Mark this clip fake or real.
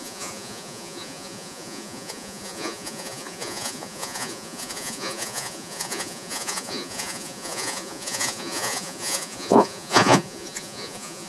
fake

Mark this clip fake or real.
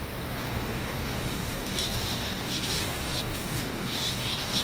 fake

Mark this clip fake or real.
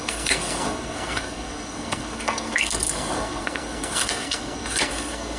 fake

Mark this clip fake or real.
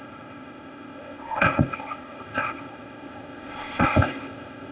fake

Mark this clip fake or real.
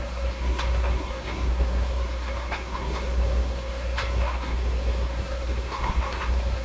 fake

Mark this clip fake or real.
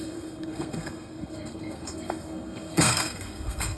fake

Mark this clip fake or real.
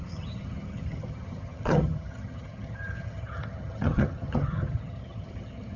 fake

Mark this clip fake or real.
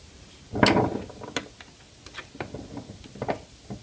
real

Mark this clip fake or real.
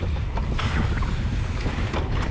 real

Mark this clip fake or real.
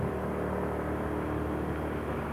real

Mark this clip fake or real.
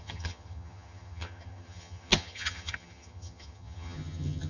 fake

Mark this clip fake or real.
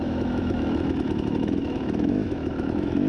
fake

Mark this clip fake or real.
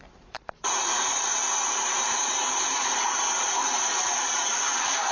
fake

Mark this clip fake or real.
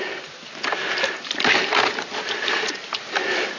real